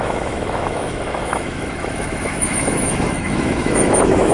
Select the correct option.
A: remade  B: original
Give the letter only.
A